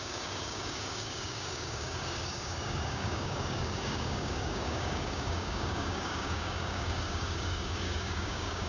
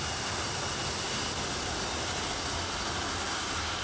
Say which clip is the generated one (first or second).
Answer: first